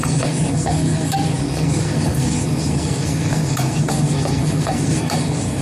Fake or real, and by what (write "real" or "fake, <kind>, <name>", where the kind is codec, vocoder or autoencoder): fake, codec, SNAC